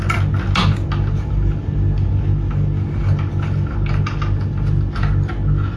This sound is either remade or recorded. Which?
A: recorded